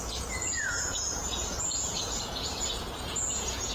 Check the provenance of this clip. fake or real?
fake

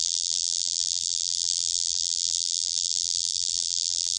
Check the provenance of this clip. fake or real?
fake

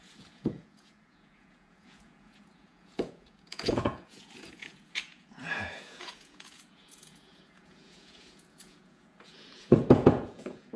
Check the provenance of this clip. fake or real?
fake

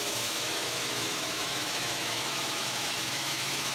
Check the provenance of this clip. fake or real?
fake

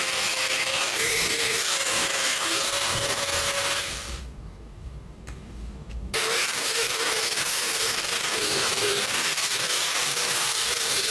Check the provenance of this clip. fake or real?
fake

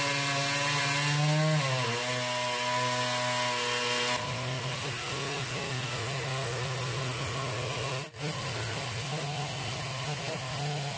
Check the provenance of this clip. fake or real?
real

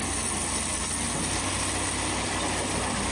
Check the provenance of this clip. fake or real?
real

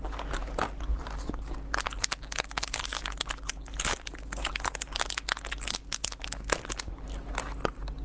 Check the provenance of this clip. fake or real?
real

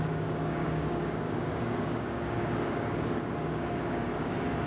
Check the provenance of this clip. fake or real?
fake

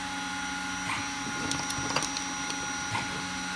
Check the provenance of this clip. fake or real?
real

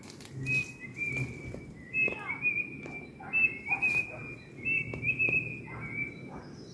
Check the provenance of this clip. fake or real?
real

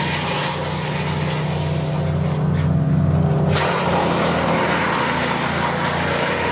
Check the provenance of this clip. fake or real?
real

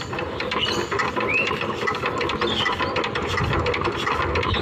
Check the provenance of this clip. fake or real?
real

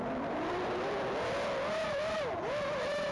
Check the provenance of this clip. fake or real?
real